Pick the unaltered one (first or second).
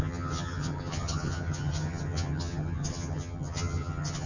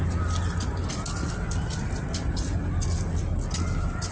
second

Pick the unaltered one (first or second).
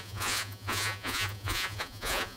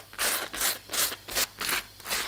second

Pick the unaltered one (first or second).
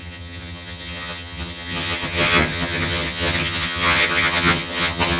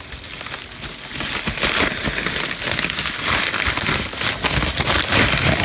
second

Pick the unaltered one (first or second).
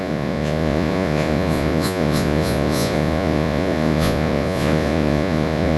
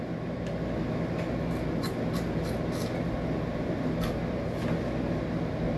second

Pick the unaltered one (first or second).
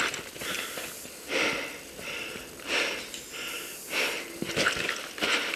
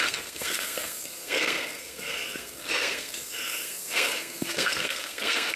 first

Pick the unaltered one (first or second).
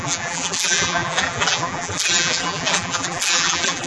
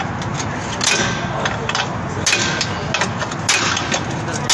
second